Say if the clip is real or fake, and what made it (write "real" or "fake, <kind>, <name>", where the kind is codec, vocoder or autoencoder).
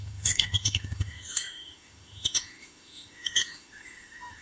fake, autoencoder, DAC-VAE